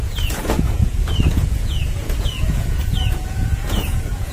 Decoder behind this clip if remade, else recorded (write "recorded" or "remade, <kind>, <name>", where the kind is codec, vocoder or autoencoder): remade, vocoder, Vocos